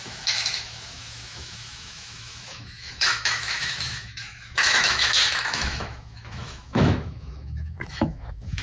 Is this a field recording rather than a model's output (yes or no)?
no